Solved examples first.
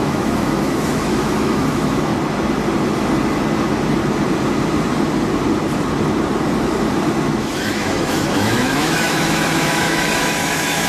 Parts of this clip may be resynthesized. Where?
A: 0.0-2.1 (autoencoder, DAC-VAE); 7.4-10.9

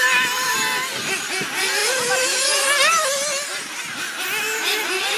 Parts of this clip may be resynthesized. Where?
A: none

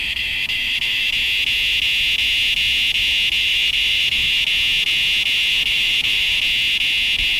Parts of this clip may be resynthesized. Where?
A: 0.0-1.1 (autoencoder, DAC-VAE); 3.4-4.4; 5.5-6.4

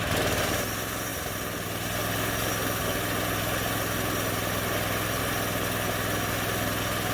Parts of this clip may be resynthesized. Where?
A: none

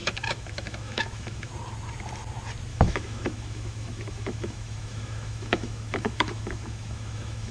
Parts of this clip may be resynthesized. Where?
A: 0.0-1.5 (autoencoder, DAC-VAE); 2.7-7.5